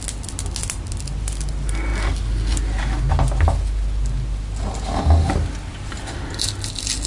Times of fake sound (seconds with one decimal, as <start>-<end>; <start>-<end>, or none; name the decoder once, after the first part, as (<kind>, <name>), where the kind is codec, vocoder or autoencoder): none